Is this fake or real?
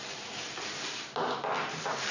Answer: real